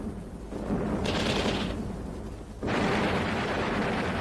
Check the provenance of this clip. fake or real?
fake